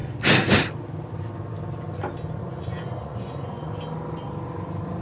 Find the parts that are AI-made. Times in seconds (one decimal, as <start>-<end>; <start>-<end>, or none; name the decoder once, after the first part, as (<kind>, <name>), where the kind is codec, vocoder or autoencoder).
2.4-3.7 (vocoder, Vocos)

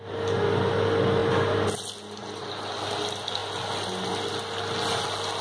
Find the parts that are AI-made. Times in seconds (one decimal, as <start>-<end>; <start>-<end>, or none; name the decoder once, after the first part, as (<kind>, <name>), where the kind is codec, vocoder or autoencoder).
none

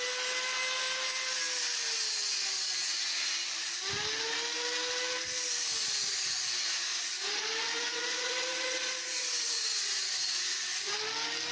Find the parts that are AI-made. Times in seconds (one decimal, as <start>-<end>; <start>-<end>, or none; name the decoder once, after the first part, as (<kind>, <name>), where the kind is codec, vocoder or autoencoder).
6.9-10.9 (vocoder, Vocos)

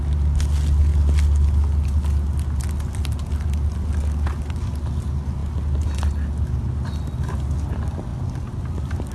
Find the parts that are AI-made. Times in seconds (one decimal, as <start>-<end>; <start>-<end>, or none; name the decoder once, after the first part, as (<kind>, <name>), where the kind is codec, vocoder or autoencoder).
none

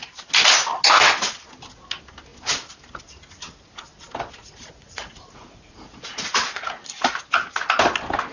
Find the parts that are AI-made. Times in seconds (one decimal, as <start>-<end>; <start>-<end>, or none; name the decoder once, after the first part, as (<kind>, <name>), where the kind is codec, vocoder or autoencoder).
4.4-7.2 (vocoder, Vocos)

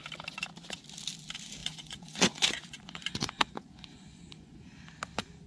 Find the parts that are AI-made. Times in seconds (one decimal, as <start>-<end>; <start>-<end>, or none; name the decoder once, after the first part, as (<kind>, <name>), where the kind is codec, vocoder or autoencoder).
1.6-4.9 (vocoder, Vocos)

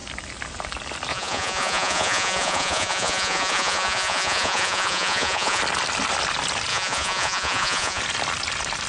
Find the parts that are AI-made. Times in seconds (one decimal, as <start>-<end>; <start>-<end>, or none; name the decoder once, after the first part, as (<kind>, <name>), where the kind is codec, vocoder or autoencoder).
1.1-5.6 (vocoder, Vocos); 6.7-8.0

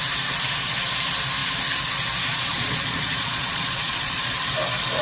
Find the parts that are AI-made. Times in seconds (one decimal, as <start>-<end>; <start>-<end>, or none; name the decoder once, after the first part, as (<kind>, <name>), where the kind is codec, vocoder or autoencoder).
2.3-4.3 (vocoder, Vocos)